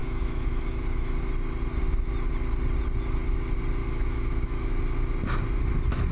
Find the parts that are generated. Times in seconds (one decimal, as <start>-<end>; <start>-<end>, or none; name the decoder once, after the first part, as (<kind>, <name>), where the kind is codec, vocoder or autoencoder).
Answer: 0.0-1.2 (autoencoder, DAC-VAE); 3.8-4.8